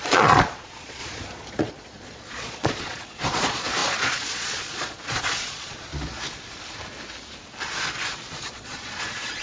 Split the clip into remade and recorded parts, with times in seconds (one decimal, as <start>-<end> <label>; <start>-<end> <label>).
0.0-5.9 remade; 5.9-8.3 recorded; 8.3-9.4 remade